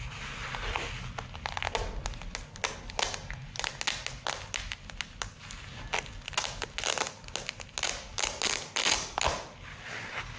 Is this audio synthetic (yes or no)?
no